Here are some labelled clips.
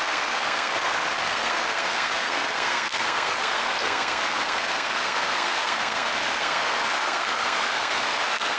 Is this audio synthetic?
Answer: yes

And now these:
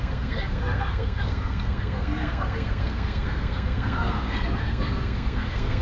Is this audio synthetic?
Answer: yes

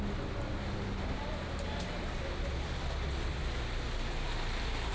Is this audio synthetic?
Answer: no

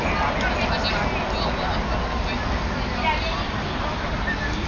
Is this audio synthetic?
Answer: no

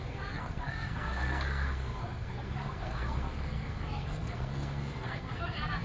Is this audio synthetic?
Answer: yes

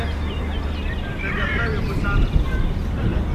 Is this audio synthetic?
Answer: no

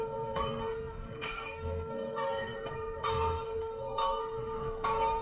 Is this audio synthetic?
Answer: yes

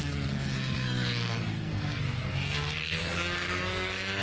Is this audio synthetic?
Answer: yes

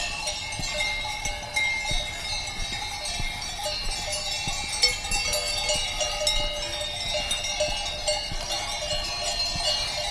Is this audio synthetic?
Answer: no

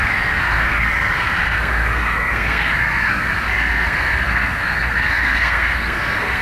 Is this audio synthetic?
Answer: yes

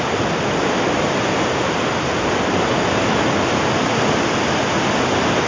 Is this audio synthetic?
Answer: no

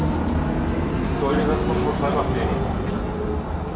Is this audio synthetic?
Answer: no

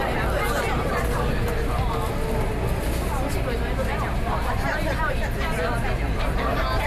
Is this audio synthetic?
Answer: no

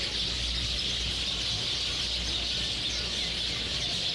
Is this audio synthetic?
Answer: no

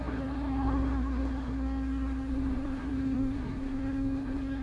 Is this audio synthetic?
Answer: yes